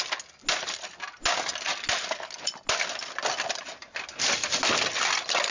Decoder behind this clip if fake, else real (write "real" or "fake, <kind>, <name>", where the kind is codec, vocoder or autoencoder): real